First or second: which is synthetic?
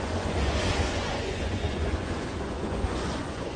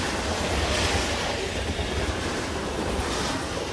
first